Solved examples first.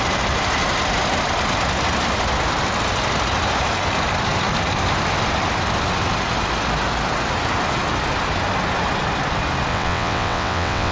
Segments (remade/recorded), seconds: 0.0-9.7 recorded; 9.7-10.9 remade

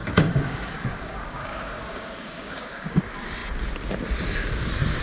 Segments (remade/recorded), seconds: 0.0-3.0 remade; 3.0-5.0 recorded

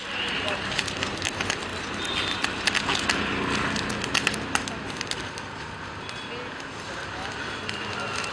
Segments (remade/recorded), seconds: 0.0-8.3 recorded

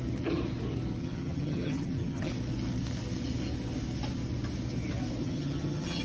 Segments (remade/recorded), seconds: 0.0-1.0 recorded; 1.0-2.3 remade; 2.3-5.2 recorded; 5.2-6.0 remade

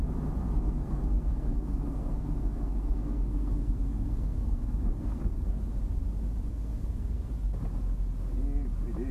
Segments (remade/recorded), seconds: 0.0-0.4 recorded; 0.4-5.6 remade; 5.6-6.5 recorded; 6.5-7.3 remade; 7.3-9.1 recorded